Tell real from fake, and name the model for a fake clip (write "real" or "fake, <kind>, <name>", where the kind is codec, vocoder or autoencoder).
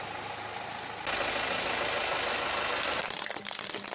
real